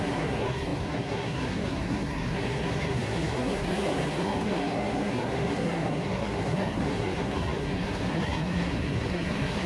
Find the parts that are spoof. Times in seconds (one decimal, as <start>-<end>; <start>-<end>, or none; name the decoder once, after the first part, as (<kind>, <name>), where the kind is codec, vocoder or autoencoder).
0.0-9.7 (codec, SNAC)